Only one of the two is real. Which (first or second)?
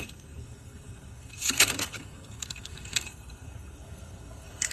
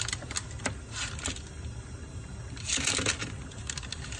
second